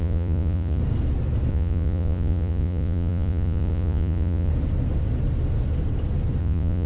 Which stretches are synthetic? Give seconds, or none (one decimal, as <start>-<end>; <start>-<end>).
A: 0.0-0.8; 1.5-4.5; 6.4-6.9